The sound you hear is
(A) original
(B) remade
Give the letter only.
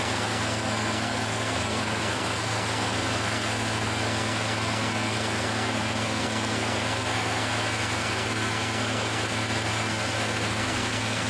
B